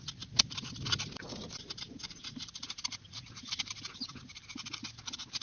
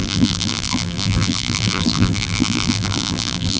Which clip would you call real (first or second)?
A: first